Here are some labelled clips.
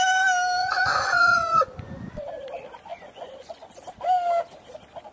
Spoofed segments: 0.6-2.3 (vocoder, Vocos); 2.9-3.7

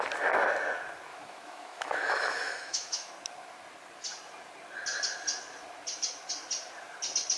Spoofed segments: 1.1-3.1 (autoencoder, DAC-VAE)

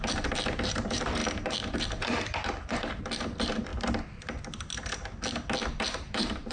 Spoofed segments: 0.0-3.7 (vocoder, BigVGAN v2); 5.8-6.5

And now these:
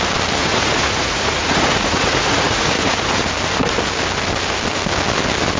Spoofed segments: 0.4-3.2 (vocoder, Vocos)